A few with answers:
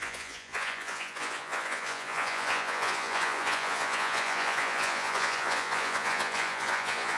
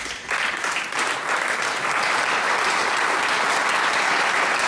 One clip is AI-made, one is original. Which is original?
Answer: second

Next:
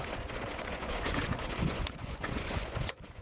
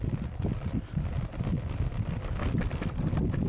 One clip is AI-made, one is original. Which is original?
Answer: second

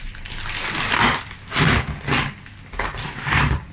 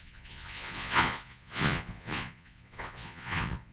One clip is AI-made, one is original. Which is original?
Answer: first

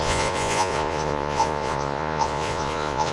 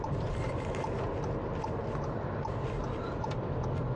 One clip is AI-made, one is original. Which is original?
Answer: second